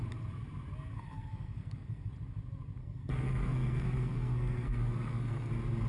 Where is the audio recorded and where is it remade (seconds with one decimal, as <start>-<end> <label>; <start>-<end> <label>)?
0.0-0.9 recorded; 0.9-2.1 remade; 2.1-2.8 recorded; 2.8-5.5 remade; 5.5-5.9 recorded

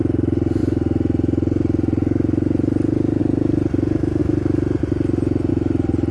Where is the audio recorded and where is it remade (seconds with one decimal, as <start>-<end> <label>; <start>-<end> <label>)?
0.0-6.1 recorded

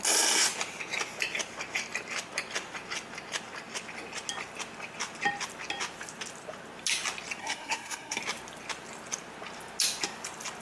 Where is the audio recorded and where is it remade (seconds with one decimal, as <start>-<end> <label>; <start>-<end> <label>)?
0.0-7.4 recorded; 7.4-8.2 remade; 8.2-10.6 recorded

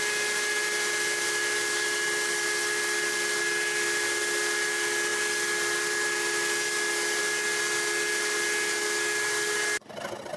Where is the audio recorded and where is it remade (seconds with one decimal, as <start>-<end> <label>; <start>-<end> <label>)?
0.0-10.4 recorded

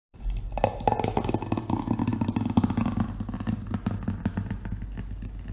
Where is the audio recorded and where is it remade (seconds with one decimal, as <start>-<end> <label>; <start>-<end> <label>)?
0.0-5.5 recorded

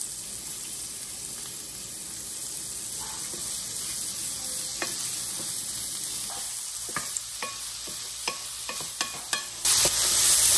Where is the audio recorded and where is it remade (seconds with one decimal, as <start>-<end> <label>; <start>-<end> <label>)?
0.0-10.6 recorded

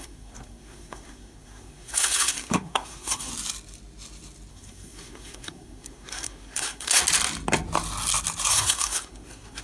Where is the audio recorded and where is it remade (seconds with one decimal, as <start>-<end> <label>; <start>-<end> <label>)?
0.0-3.3 remade; 3.3-4.5 recorded; 4.5-7.0 remade; 7.0-8.5 recorded; 8.5-9.6 remade